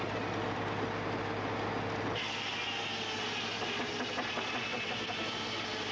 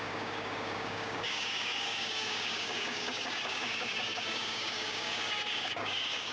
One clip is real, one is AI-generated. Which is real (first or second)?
first